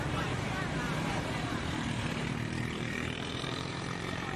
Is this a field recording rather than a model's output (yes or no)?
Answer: no